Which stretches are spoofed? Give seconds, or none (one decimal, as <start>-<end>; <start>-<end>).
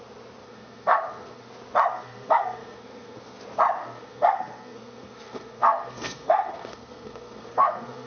0.4-1.5; 1.9-3.4; 3.8-8.1